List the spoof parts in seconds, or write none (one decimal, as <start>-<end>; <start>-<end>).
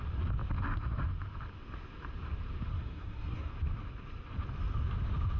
2.7-3.5